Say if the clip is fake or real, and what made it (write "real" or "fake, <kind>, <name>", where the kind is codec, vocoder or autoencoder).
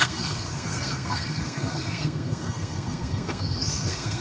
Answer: fake, codec, SNAC